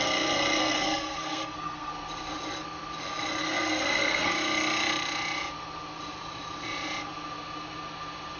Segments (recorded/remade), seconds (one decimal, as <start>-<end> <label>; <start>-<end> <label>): 0.0-0.6 recorded; 0.6-1.9 remade; 1.9-3.4 recorded; 3.4-4.3 remade; 4.3-8.4 recorded